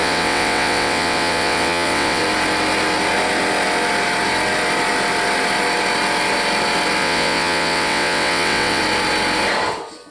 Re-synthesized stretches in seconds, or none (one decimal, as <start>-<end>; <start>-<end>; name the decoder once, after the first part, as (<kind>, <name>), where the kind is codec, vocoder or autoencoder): 0.0-2.2 (vocoder, WaveNeXt); 7.0-8.8